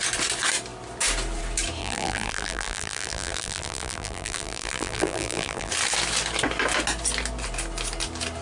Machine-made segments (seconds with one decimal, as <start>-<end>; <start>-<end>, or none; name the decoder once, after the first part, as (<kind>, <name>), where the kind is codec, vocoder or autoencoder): 1.8-5.7 (vocoder, BigVGAN v2)